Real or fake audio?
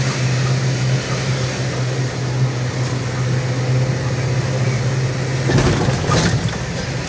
real